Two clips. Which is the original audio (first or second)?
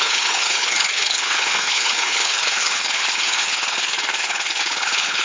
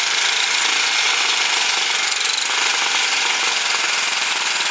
second